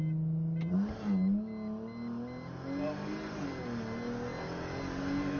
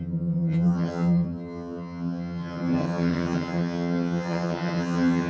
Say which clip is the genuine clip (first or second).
first